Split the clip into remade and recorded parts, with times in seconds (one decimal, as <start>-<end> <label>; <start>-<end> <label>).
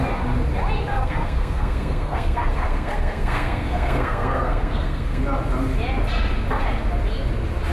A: 0.0-0.9 recorded; 0.9-5.2 remade; 5.2-7.7 recorded